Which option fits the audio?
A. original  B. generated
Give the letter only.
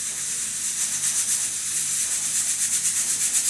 A